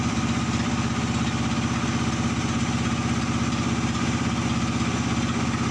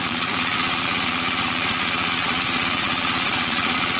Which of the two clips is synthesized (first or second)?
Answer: second